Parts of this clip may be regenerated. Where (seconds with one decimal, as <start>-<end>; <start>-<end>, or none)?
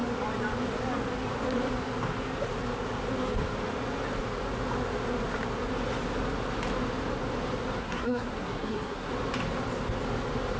7.8-9.1